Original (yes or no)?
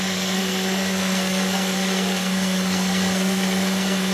no